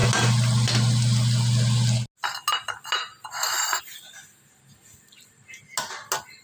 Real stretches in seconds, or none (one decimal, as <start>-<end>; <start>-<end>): 0.0-6.4